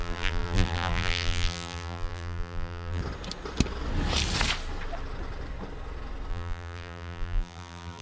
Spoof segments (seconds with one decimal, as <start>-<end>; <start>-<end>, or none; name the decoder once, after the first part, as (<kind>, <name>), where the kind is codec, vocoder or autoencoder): 0.0-3.0 (vocoder, BigVGAN v2); 6.3-8.0